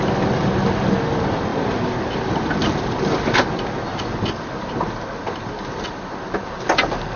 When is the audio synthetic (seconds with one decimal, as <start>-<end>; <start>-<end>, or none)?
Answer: none